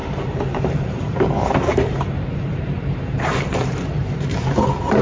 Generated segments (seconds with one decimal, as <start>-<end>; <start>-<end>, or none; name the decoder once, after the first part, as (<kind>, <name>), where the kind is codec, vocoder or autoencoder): 0.0-5.0 (vocoder, BigVGAN v2)